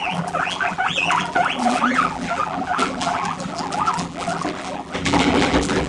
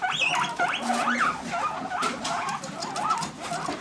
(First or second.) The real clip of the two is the second